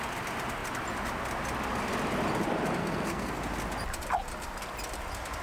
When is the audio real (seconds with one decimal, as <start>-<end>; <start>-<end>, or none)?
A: 0.0-2.8; 3.4-5.4